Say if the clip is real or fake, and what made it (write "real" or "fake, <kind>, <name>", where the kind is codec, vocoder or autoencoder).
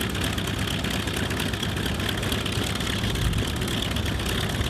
real